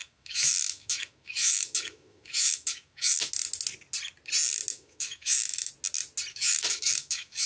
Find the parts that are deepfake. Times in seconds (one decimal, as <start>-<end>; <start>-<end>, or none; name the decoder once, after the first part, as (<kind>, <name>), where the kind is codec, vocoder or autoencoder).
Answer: 0.0-3.3 (autoencoder, DAC-VAE); 4.7-5.7; 6.3-7.5